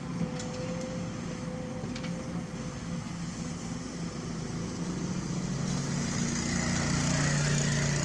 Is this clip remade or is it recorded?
recorded